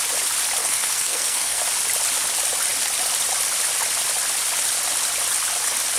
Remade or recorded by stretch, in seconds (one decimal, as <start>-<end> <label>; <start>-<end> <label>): 0.0-0.6 recorded; 0.6-1.6 remade; 1.6-6.0 recorded